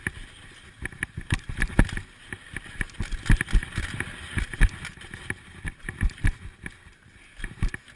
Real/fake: real